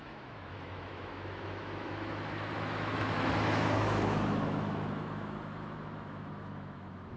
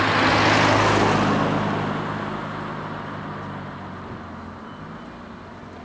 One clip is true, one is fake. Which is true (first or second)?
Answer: second